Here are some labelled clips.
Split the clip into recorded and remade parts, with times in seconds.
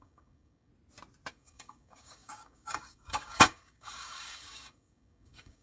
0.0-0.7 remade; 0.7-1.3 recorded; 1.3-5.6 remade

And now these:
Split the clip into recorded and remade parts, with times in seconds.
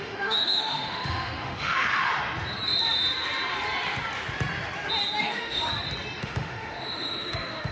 0.0-2.1 remade; 2.1-5.2 recorded; 5.2-5.7 remade; 5.7-6.2 recorded; 6.2-7.7 remade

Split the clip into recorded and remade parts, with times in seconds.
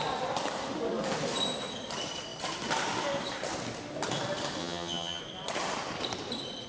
0.0-4.6 recorded; 4.6-5.2 remade; 5.2-6.7 recorded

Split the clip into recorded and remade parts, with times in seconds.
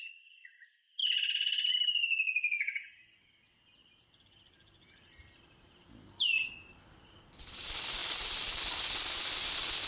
0.0-1.0 recorded; 1.0-1.7 remade; 1.7-3.8 recorded; 3.8-7.2 remade; 7.2-8.0 recorded; 8.0-8.6 remade; 8.6-9.9 recorded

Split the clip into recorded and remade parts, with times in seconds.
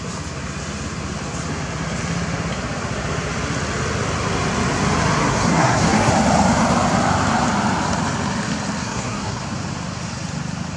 0.0-5.3 recorded; 5.3-6.1 remade; 6.1-8.8 recorded; 8.8-9.4 remade; 9.4-10.8 recorded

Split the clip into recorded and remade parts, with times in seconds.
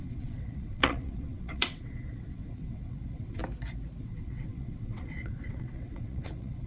0.0-3.4 remade; 3.4-4.0 recorded; 4.0-6.7 remade